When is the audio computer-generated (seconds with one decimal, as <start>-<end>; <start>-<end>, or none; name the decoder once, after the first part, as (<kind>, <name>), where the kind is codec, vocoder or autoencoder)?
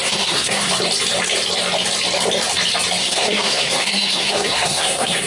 0.0-0.7 (codec, SNAC); 3.0-5.3